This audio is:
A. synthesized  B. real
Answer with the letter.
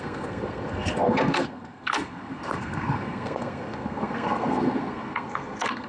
A